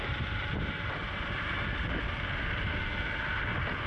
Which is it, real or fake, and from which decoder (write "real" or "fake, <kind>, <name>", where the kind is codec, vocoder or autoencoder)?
real